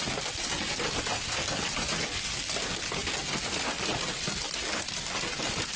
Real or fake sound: real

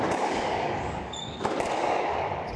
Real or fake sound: fake